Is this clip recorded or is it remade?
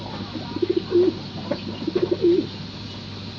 recorded